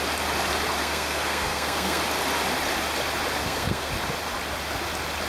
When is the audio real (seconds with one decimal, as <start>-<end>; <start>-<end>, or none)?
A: 0.0-0.8; 2.0-3.4; 3.9-5.3